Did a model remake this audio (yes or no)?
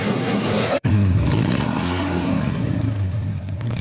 yes